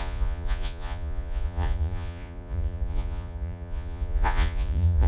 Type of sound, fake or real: fake